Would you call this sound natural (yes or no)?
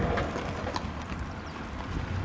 yes